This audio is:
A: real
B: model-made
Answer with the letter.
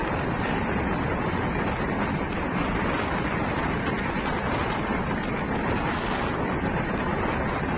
A